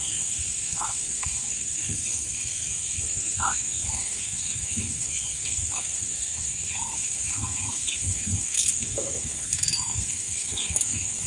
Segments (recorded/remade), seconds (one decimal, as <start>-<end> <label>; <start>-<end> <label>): 0.0-11.3 remade